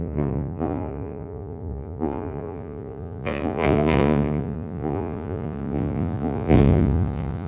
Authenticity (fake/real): fake